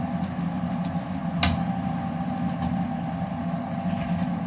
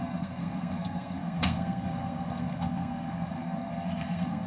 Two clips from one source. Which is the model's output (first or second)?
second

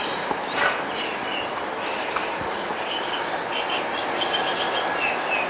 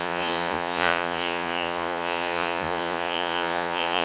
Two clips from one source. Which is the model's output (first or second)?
second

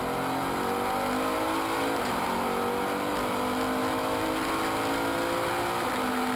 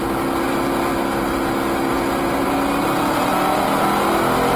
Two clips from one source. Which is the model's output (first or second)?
first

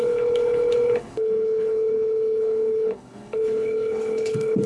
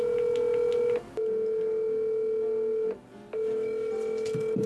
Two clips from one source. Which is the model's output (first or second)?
first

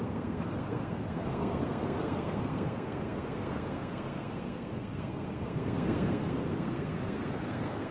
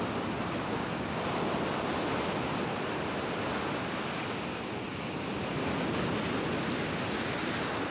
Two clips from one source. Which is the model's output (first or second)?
first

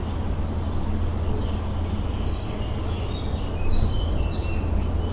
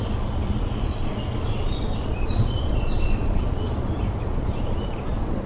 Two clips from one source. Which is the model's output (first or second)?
second